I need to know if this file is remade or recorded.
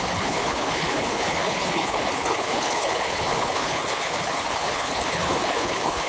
remade